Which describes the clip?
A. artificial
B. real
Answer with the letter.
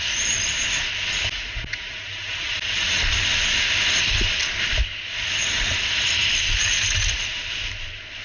B